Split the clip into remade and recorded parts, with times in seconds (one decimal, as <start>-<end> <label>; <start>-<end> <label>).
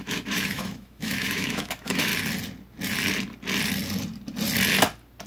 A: 0.0-2.1 remade; 2.1-5.3 recorded